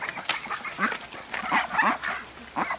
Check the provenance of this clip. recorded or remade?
recorded